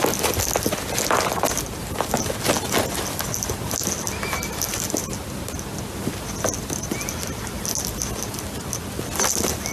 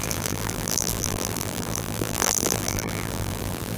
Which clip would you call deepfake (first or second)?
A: second